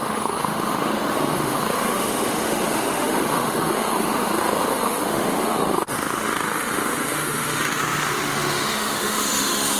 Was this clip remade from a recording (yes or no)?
yes